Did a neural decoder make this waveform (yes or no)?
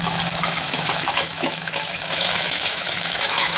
yes